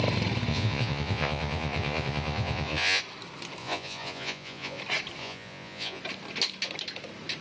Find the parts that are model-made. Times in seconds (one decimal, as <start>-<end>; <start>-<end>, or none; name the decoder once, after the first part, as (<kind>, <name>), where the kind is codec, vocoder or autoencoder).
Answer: 0.5-3.0 (vocoder, Vocos); 3.6-4.8; 5.2-6.0